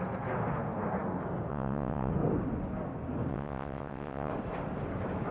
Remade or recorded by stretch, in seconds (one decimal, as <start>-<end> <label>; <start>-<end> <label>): 0.0-1.5 recorded; 1.5-2.1 remade; 2.1-3.3 recorded; 3.3-4.3 remade; 4.3-5.3 recorded